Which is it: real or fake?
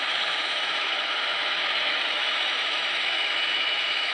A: fake